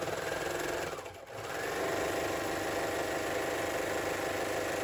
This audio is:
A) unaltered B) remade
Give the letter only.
A